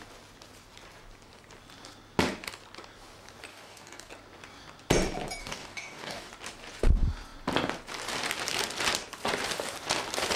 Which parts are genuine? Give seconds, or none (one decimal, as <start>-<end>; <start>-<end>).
0.0-3.5; 4.1-5.4; 6.3-10.4